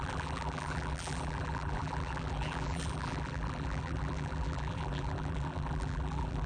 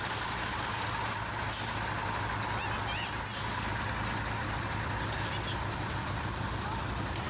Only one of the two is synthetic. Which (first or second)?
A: first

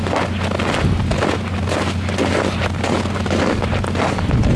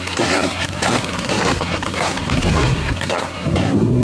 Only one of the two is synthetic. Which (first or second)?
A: second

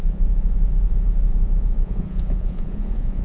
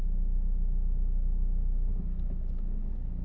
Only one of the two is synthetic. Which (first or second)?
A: first